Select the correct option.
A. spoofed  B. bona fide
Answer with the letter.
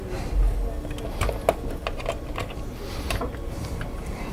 B